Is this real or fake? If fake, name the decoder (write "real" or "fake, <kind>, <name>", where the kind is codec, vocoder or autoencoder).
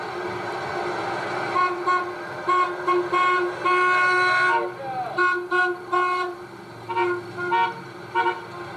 real